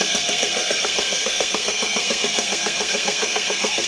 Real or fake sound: fake